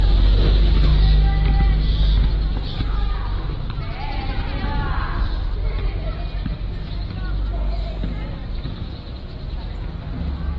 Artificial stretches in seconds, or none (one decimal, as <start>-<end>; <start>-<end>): 8.4-9.5